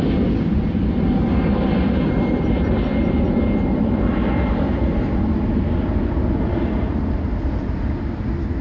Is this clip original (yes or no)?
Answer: yes